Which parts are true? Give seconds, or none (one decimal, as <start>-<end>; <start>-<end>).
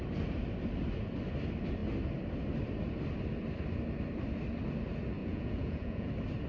0.0-5.2; 6.1-6.5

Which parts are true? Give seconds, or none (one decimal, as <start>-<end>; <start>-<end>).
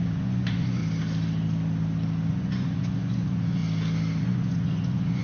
0.8-2.3; 3.6-4.2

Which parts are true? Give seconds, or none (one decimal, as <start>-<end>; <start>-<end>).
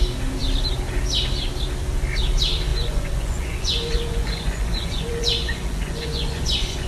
0.0-2.7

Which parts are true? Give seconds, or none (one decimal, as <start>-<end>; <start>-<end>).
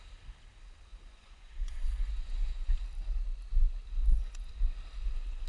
0.0-0.9; 2.7-4.0; 4.5-5.5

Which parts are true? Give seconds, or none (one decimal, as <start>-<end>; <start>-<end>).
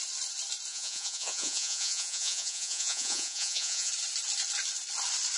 0.0-0.7; 3.9-5.4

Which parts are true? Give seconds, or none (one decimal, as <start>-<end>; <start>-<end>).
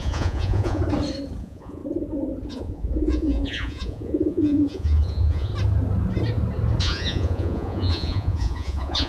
0.8-1.4; 1.8-2.5; 5.5-6.8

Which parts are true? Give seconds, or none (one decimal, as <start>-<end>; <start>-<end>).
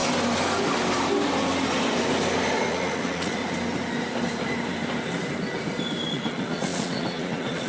0.0-2.7; 3.4-6.1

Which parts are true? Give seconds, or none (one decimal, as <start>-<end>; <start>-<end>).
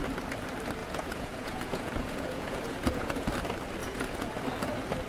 0.0-0.8; 3.3-3.8; 4.3-5.1